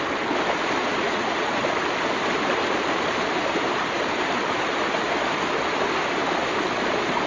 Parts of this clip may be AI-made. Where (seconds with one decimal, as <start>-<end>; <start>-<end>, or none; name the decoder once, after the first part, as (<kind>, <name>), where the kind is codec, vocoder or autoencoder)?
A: 0.8-1.6 (vocoder, Vocos)